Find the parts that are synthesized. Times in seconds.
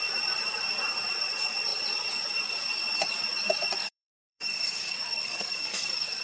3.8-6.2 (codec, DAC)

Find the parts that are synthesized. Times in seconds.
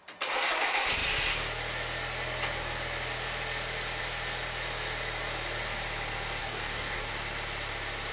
6.4-7.1 (codec, DAC)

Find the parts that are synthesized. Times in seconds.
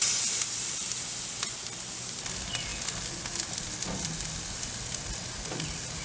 none